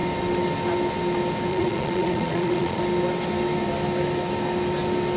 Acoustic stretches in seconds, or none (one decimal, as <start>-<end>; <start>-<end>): 0.0-1.5; 2.8-5.2